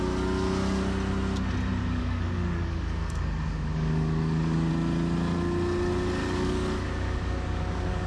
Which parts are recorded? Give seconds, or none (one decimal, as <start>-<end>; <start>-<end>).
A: 0.0-1.8; 4.7-6.2